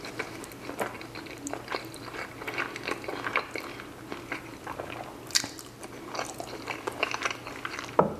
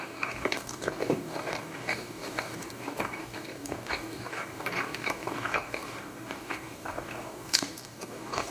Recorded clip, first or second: first